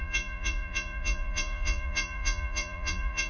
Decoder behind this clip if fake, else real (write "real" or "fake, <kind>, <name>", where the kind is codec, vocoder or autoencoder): fake, vocoder, Vocos